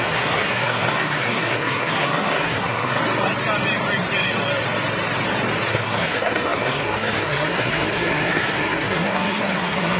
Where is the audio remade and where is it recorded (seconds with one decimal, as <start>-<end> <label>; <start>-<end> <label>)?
0.0-3.0 remade; 3.0-5.7 recorded; 5.7-10.0 remade